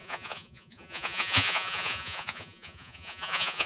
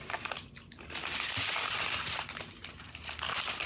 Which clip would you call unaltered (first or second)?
second